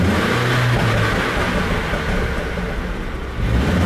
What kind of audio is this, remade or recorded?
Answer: recorded